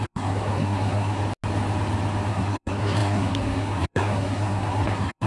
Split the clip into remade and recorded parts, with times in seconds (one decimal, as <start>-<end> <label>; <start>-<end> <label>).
0.0-1.2 remade; 1.2-2.3 recorded; 2.3-5.3 remade